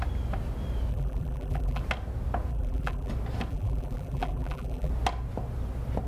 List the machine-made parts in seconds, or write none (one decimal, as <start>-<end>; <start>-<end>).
0.9-1.8; 2.5-3.1; 3.5-4.9